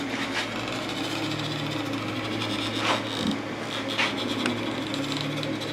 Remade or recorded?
recorded